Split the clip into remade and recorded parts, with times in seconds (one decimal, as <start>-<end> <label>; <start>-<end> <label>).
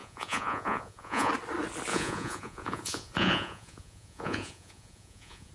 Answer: 0.0-1.3 remade; 1.3-1.9 recorded; 1.9-5.5 remade